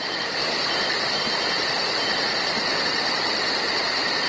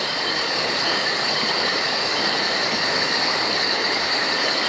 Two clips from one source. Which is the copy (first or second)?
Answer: second